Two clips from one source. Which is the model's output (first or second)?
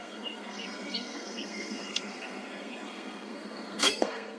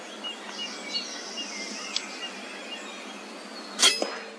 first